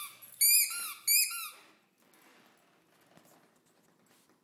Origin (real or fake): real